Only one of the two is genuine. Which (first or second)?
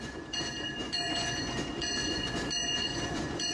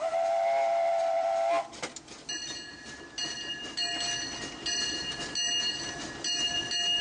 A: second